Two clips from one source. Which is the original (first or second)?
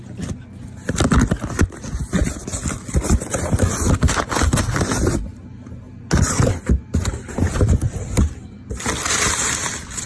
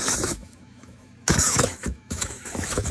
first